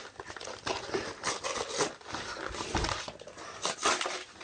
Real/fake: real